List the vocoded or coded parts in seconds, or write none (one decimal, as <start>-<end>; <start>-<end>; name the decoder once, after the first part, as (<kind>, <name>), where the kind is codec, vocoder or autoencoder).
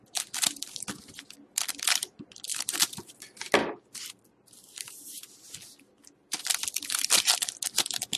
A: 2.5-3.1 (vocoder, BigVGAN v2); 3.6-6.4